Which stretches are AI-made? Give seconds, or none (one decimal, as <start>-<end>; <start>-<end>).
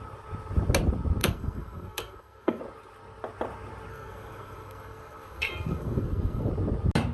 1.2-2.6; 3.9-6.5